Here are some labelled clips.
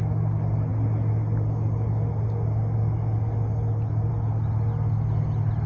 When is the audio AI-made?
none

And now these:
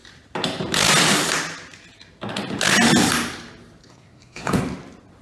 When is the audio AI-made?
3.8-4.6 (codec, SNAC)

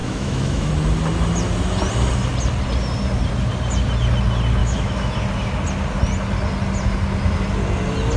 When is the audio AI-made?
0.0-0.7 (autoencoder, DAC-VAE); 4.6-5.1